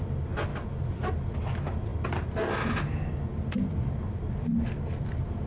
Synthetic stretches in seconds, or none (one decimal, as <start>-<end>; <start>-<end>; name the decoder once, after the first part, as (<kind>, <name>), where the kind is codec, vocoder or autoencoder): none